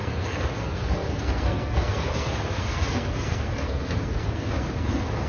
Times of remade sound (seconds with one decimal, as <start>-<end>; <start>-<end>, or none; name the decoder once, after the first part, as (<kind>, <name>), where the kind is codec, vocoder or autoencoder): 0.0-5.3 (codec, SNAC)